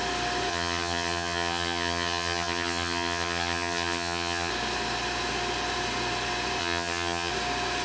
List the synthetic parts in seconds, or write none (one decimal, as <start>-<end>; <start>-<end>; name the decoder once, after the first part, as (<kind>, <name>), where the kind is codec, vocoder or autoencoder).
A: 0.5-4.5 (vocoder, HiFi-GAN); 6.6-7.3